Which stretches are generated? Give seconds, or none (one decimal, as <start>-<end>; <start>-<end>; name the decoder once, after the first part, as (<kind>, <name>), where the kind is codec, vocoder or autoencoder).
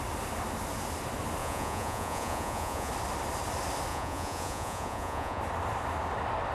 1.4-2.9 (vocoder, Vocos); 3.9-5.4